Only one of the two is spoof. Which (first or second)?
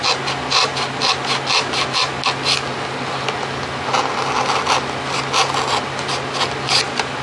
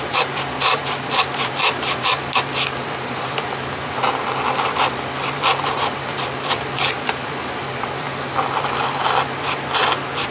second